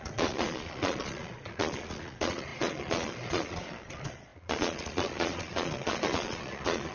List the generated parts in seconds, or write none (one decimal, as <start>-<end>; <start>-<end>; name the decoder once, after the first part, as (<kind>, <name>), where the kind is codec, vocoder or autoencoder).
0.0-6.9 (vocoder, Vocos)